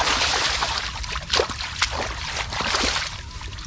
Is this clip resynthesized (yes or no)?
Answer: yes